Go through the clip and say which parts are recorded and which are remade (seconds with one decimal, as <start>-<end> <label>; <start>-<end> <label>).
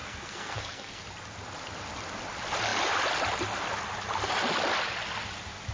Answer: 0.0-1.0 remade; 1.0-5.7 recorded